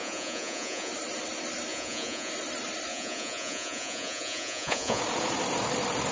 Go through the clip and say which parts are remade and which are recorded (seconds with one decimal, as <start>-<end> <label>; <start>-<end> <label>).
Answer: 0.0-0.9 remade; 0.9-1.7 recorded; 1.7-2.3 remade; 2.3-2.9 recorded; 2.9-5.0 remade; 5.0-6.1 recorded